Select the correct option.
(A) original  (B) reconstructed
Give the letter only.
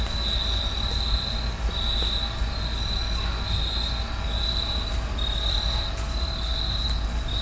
A